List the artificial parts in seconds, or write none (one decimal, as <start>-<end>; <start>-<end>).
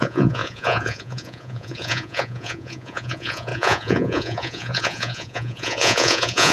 0.0-6.5